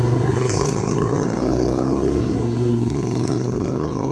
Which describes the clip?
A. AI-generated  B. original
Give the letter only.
A